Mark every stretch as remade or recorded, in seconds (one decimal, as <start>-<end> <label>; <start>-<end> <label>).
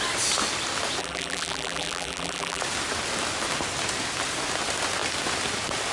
0.0-1.0 recorded; 1.0-2.6 remade; 2.6-5.9 recorded